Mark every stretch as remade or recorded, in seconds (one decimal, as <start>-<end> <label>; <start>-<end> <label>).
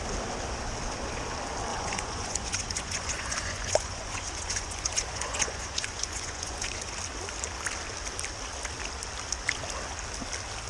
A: 0.0-1.7 recorded; 1.7-6.9 remade; 6.9-10.7 recorded